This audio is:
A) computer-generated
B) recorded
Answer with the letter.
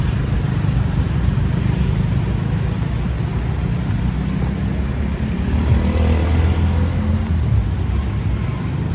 B